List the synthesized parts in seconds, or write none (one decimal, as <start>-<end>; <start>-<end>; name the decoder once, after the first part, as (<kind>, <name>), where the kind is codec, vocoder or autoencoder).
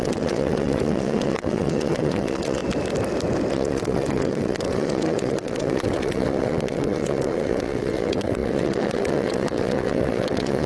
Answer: 0.0-2.6 (vocoder, WaveNeXt); 3.5-10.7